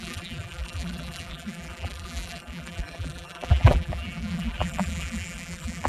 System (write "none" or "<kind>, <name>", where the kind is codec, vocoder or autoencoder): vocoder, BigVGAN v2